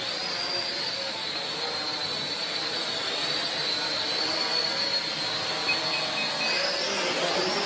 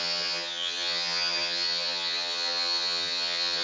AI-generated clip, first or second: second